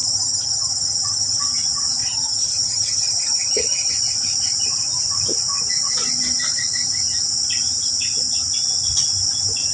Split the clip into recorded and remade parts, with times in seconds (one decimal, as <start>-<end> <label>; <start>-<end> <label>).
0.0-1.4 remade; 1.4-2.0 recorded; 2.0-3.9 remade; 3.9-9.7 recorded